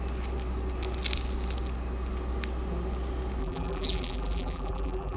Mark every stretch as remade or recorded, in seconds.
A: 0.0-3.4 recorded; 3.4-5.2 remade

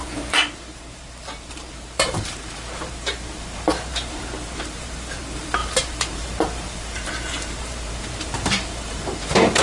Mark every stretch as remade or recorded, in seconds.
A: 0.0-9.6 remade